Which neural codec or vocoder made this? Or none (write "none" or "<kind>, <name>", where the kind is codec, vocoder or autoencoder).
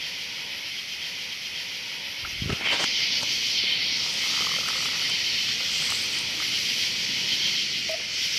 none